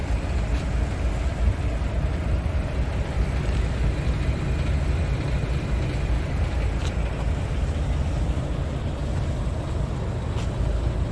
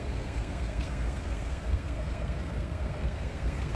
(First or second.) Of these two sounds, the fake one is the second